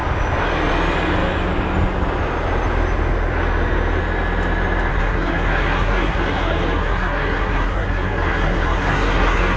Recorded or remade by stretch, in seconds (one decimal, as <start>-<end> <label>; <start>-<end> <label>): 0.0-4.9 recorded; 4.9-9.6 remade